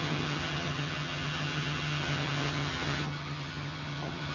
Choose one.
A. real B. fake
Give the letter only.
B